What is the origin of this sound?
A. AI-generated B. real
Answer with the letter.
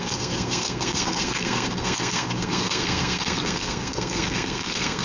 A